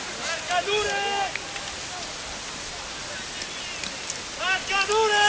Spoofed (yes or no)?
no